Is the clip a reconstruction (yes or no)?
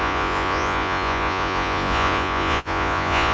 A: yes